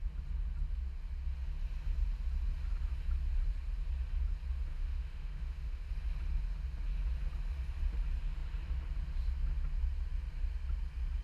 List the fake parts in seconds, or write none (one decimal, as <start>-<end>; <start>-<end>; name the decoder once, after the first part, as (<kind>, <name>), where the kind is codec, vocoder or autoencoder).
4.7-5.9 (autoencoder, DAC-VAE)